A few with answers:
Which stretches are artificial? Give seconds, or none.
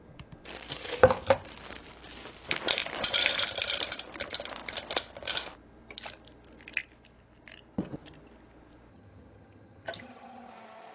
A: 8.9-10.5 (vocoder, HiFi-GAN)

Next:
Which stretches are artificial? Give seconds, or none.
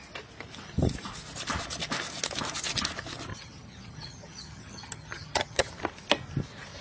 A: 3.3-5.7 (vocoder, HiFi-GAN)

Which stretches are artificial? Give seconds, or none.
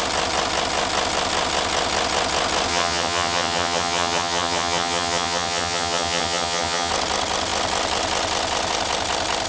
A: 2.7-6.9 (vocoder, HiFi-GAN)